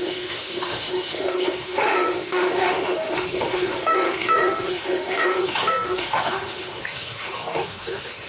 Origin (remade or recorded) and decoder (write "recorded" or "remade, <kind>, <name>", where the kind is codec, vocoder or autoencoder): remade, autoencoder, DAC-VAE